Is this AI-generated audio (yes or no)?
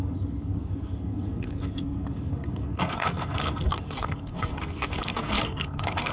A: yes